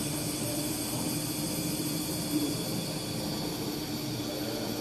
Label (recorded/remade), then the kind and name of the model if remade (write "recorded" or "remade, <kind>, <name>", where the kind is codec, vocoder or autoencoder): recorded